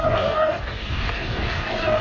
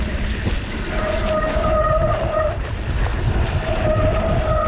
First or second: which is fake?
first